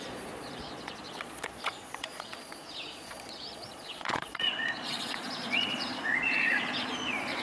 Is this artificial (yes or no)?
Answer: yes